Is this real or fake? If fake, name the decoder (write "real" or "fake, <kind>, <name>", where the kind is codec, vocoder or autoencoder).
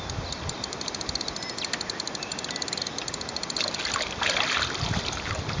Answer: real